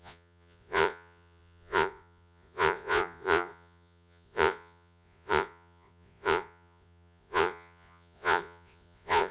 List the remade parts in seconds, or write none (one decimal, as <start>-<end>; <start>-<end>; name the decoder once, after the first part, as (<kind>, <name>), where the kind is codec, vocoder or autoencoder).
0.0-9.3 (vocoder, Vocos)